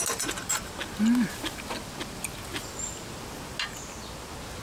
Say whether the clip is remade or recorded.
recorded